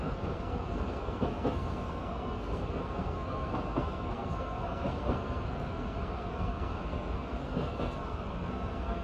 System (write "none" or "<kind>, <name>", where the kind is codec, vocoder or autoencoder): codec, SNAC